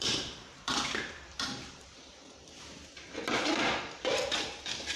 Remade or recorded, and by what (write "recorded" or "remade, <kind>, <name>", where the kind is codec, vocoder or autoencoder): remade, vocoder, BigVGAN v2